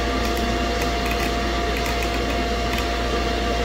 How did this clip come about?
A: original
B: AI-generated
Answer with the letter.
A